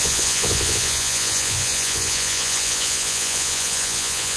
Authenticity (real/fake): fake